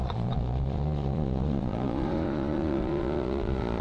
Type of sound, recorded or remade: remade